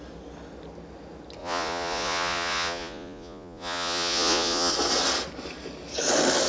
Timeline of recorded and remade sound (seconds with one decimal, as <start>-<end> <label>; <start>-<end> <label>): 0.0-1.4 recorded; 1.4-4.7 remade; 4.7-6.5 recorded